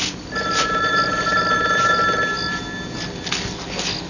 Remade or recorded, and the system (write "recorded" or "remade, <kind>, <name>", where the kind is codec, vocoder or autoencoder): recorded